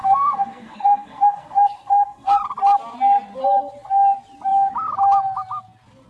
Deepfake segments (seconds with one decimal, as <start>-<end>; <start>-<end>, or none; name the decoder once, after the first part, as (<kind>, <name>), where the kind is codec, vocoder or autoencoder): 0.0-2.3 (codec, SNAC)